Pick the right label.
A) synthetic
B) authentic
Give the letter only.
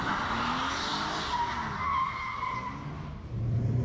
B